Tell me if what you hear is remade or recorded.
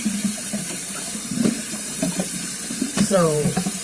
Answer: remade